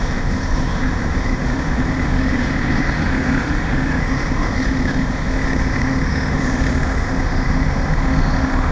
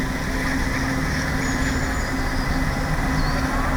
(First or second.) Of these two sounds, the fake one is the first